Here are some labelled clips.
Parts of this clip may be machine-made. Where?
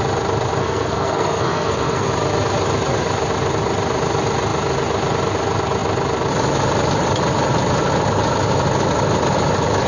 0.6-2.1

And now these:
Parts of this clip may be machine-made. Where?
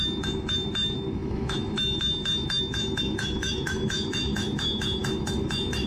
0.0-5.9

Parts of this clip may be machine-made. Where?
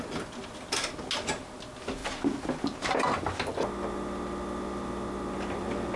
none